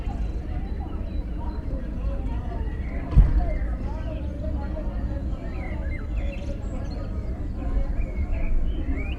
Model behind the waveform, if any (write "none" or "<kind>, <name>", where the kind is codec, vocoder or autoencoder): none